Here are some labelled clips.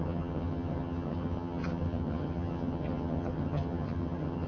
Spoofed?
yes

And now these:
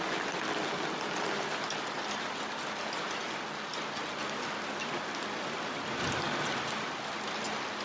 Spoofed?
no